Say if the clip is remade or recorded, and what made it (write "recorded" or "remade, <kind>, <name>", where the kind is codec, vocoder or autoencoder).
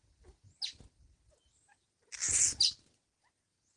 recorded